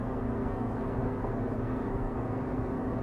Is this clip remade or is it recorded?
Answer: remade